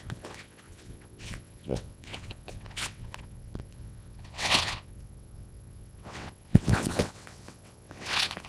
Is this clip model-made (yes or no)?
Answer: yes